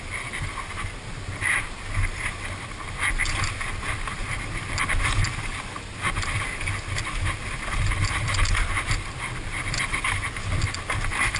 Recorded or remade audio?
recorded